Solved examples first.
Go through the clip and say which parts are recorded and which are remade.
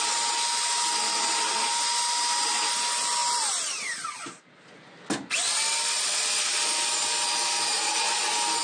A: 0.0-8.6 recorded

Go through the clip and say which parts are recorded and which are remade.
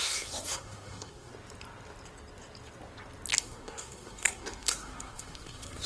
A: 0.0-1.3 remade; 1.3-3.4 recorded; 3.4-5.9 remade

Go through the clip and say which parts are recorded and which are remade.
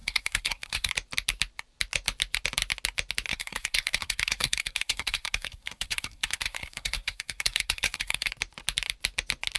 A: 0.0-0.9 remade; 0.9-3.3 recorded; 3.3-8.3 remade; 8.3-9.6 recorded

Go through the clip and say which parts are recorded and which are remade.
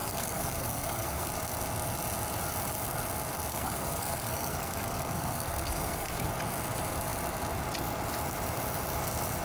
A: 0.0-1.3 remade; 1.3-3.5 recorded; 3.5-6.3 remade; 6.3-9.4 recorded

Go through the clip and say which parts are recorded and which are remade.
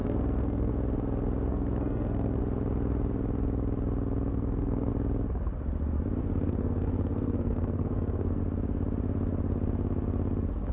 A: 0.0-0.7 remade; 0.7-1.5 recorded; 1.5-2.4 remade; 2.4-4.3 recorded; 4.3-4.9 remade; 4.9-6.2 recorded; 6.2-8.4 remade; 8.4-10.7 recorded